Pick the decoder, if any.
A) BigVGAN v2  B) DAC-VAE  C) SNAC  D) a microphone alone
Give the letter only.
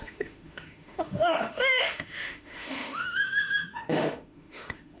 B